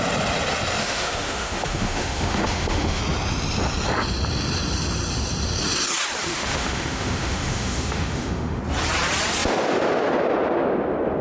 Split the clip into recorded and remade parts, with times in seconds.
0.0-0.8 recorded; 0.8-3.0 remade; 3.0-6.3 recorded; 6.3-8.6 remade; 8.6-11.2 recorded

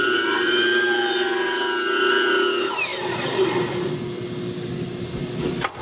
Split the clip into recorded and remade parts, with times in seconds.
0.0-5.8 recorded

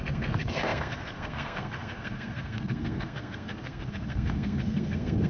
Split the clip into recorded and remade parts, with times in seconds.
0.0-5.3 remade

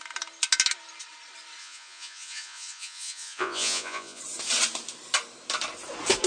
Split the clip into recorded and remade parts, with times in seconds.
0.0-1.6 recorded; 1.6-4.2 remade; 4.2-6.3 recorded